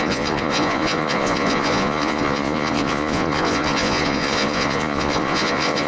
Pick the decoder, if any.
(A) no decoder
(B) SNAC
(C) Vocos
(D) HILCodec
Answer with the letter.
C